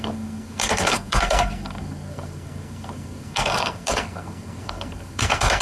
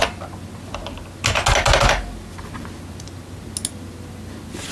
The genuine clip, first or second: second